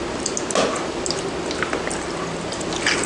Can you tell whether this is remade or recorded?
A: recorded